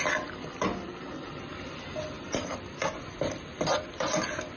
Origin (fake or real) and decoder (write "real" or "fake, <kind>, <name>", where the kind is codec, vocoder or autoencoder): real